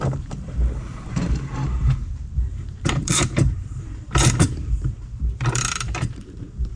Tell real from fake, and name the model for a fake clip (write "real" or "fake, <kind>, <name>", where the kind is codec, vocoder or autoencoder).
fake, vocoder, BigVGAN v2